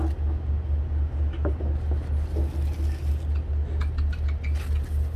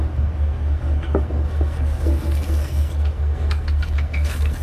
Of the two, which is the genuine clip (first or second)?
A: first